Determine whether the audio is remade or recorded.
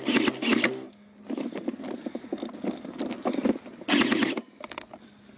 recorded